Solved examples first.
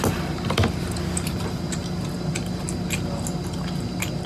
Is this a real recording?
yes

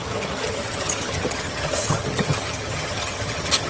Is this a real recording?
no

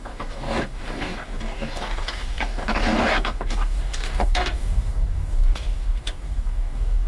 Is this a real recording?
no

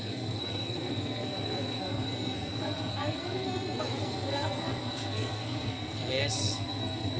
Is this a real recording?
no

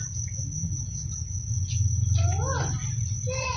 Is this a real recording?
yes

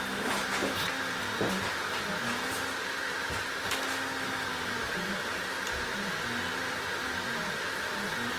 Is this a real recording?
yes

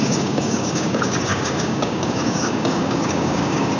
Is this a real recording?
no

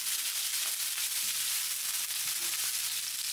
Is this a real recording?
yes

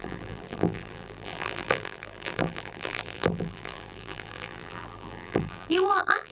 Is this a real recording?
no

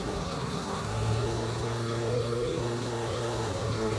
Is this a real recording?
no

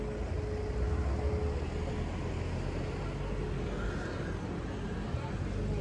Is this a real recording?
yes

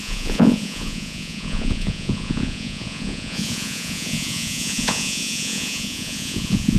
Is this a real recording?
no